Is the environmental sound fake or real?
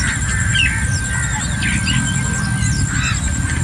real